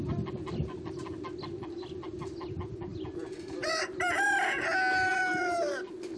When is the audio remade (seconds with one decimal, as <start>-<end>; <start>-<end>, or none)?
2.9-3.7; 5.1-5.7